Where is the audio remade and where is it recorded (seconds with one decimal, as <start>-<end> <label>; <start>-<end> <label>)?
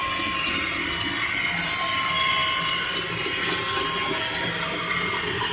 0.0-5.5 recorded